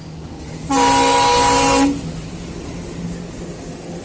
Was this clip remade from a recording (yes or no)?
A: no